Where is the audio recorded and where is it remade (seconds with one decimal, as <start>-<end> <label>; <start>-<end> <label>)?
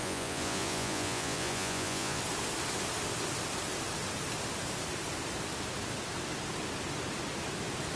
0.0-2.2 remade; 2.2-8.0 recorded